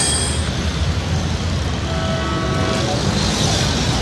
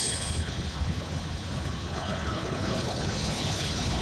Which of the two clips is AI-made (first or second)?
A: second